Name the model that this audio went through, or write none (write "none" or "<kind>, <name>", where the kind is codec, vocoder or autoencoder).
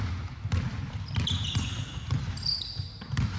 none